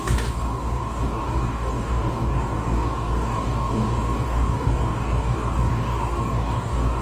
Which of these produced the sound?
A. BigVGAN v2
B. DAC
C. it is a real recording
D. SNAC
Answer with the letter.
B